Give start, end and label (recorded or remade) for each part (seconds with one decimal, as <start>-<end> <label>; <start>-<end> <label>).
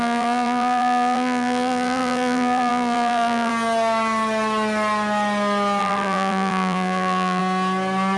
0.0-3.5 remade; 3.5-5.8 recorded; 5.8-7.4 remade; 7.4-8.2 recorded